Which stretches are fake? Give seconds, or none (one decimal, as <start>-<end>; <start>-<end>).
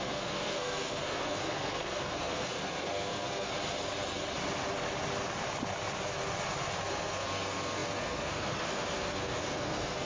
0.0-3.5; 6.8-10.1